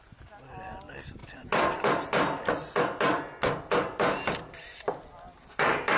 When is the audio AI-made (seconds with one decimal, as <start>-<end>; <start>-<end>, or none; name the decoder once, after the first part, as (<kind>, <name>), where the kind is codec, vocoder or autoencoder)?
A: none